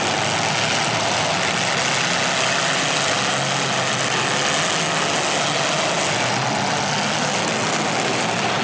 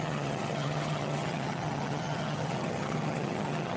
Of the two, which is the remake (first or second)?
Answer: second